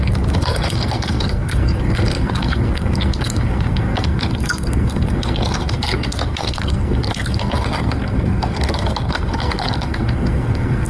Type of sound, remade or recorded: remade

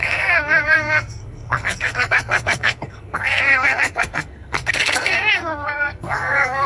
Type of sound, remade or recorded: remade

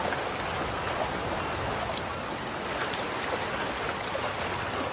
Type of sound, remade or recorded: recorded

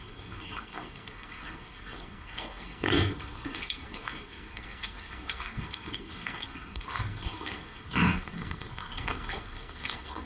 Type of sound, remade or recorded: remade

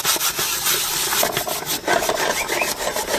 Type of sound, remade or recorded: recorded